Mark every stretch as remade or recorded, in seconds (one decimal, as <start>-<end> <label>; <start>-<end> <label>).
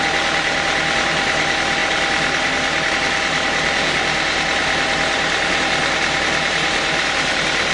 0.0-7.7 recorded